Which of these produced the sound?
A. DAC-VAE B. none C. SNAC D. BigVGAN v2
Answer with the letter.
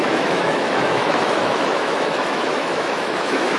A